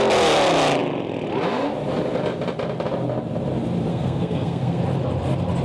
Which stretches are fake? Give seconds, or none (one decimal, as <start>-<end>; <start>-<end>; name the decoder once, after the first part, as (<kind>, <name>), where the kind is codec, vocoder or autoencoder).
3.9-4.8 (codec, SNAC)